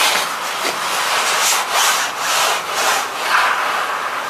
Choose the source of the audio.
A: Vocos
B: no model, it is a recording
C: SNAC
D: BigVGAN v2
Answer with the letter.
B